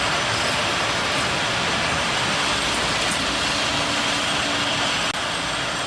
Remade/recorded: recorded